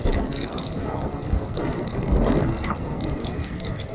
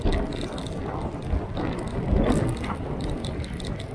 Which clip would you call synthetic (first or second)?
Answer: first